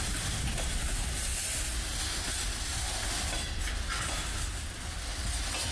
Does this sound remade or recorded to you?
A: recorded